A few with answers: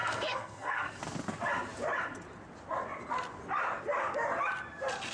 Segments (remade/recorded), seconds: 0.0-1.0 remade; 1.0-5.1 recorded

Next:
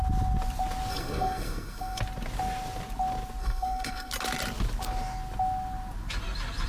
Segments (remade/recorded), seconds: 0.0-0.9 recorded; 0.9-2.0 remade; 2.0-3.4 recorded; 3.4-4.1 remade; 4.1-6.7 recorded

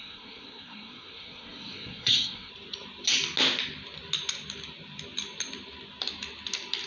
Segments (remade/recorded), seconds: 0.0-2.5 remade; 2.5-6.9 recorded

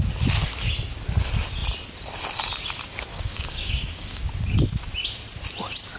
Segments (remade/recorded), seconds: 0.0-3.1 recorded; 3.1-4.2 remade; 4.2-6.0 recorded

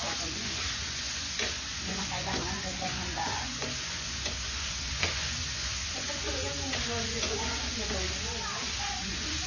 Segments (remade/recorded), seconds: 0.0-9.5 remade

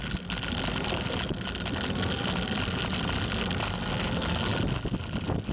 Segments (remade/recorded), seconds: 0.0-5.5 recorded

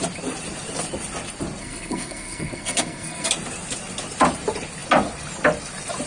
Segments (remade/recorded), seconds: 0.0-1.6 recorded; 1.6-3.3 remade; 3.3-6.1 recorded

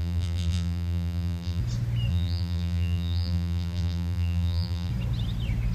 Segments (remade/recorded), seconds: 0.0-1.6 remade; 1.6-2.1 recorded; 2.1-4.9 remade; 4.9-5.7 recorded